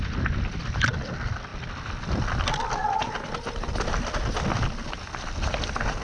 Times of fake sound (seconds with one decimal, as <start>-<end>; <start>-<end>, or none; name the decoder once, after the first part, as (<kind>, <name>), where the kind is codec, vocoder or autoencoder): none

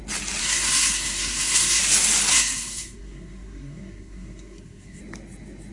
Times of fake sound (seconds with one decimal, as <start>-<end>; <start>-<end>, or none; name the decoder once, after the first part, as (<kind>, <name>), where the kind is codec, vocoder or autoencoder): 0.4-1.8 (codec, SNAC); 2.3-5.0

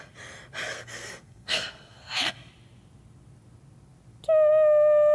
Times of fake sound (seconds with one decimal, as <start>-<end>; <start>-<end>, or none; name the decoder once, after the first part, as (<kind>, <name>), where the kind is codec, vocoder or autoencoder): 0.7-2.5 (codec, SNAC)

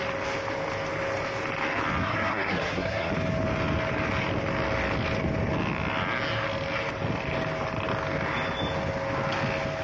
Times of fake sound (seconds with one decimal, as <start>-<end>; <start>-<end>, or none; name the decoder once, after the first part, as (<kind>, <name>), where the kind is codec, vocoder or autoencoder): 2.0-3.1 (codec, SNAC)

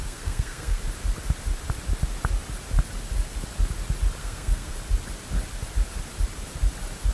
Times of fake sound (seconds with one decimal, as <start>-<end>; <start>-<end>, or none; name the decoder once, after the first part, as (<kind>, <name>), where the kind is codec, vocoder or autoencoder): 0.0-0.8 (codec, SNAC); 4.2-4.7

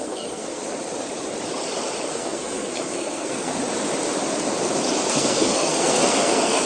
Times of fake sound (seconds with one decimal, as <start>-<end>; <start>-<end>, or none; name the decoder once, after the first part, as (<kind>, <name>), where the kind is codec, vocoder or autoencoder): 0.0-0.6 (codec, SNAC); 2.1-3.5; 5.1-6.7

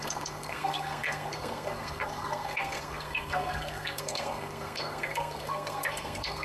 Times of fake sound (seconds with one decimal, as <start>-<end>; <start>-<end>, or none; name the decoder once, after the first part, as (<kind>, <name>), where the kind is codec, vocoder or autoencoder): 0.0-6.4 (codec, SNAC)